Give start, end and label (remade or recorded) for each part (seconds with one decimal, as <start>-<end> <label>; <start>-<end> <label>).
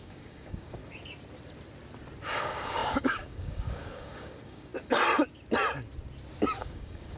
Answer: 0.0-0.8 remade; 0.8-2.4 recorded; 2.4-4.7 remade; 4.7-6.6 recorded; 6.6-7.2 remade